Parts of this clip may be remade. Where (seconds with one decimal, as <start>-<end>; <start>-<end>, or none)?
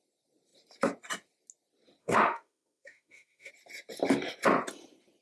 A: 2.0-3.5